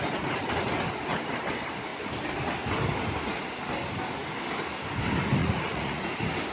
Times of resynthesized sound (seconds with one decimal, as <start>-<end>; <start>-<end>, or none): 5.4-6.0